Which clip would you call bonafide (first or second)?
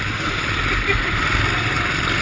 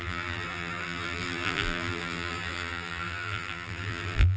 first